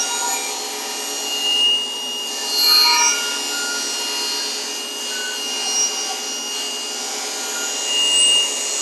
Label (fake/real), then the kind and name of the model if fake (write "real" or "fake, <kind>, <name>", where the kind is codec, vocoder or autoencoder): real